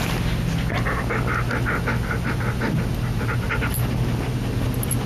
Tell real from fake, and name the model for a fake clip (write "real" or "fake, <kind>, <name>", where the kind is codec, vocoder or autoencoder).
real